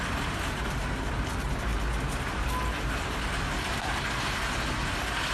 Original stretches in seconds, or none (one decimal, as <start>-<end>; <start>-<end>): 0.0-5.3